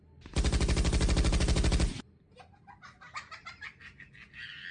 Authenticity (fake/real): real